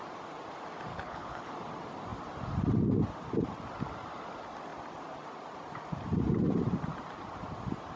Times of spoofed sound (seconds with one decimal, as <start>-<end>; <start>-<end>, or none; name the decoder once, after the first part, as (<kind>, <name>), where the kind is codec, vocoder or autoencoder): 0.9-1.5 (codec, HILCodec)